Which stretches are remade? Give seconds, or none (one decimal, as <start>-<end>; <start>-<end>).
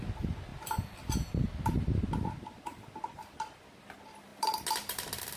none